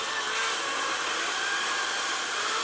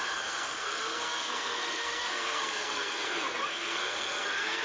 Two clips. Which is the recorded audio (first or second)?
first